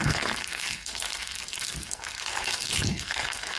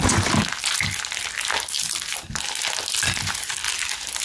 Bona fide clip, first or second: second